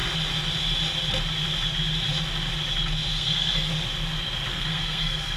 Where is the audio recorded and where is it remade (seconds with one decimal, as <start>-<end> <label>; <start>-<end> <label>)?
0.0-3.1 recorded; 3.1-3.7 remade; 3.7-4.5 recorded; 4.5-5.4 remade